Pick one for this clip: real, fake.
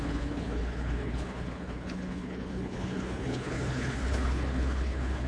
fake